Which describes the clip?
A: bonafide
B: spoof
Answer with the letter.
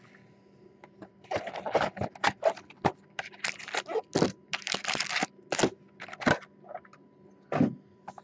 A